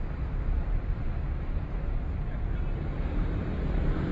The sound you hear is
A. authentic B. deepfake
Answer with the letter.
B